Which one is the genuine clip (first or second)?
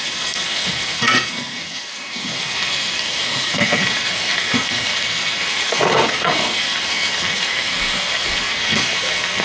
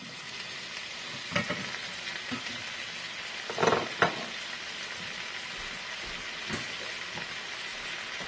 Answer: second